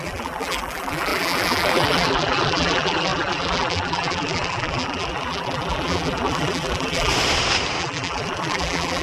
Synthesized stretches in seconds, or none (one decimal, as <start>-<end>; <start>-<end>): 0.0-7.1; 7.8-9.0